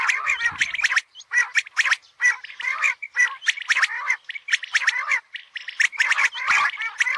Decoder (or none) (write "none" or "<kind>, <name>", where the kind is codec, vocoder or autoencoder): none